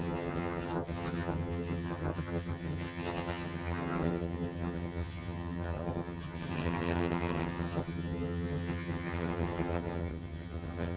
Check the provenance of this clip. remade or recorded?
remade